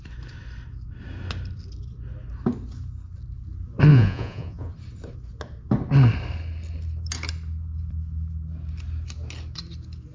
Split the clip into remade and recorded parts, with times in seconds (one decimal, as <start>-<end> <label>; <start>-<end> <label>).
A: 0.0-3.9 recorded; 3.9-4.7 remade; 4.7-10.1 recorded